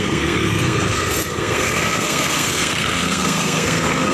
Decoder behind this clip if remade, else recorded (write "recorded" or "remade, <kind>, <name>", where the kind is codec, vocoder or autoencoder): remade, codec, SNAC